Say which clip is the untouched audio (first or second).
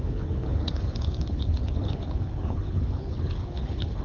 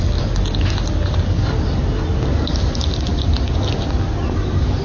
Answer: second